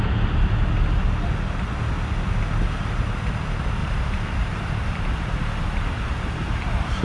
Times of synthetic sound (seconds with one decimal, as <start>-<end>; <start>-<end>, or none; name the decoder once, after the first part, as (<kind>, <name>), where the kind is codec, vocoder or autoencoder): 3.8-7.0 (vocoder, BigVGAN v2)